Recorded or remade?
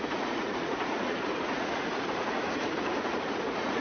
remade